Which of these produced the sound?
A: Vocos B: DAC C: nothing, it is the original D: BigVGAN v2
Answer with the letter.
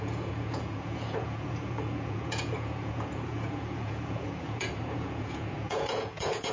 A